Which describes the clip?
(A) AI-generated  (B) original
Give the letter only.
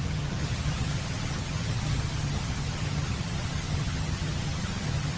A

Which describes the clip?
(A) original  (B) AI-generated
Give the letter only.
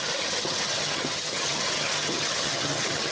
B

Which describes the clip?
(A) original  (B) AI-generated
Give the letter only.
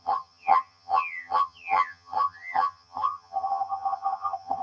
B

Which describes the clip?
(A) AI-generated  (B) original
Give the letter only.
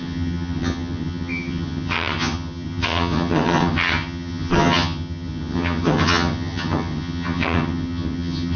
A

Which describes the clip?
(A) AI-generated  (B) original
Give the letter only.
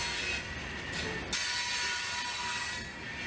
B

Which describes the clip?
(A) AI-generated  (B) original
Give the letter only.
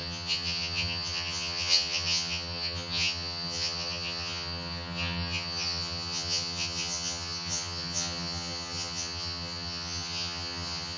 A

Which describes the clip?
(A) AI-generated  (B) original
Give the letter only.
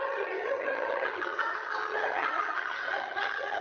A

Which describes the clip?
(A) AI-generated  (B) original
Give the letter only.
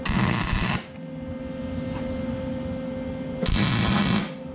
B